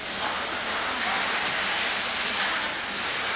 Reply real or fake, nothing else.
real